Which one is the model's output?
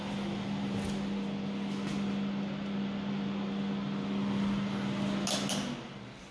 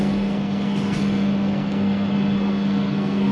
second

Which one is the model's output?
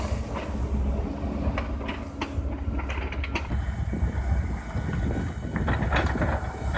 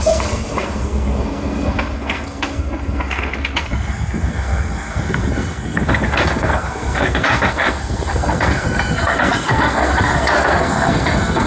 second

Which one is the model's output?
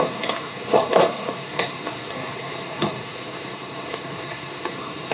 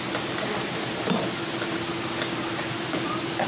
first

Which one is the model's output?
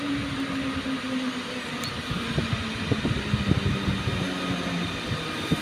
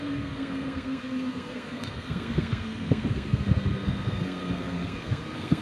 second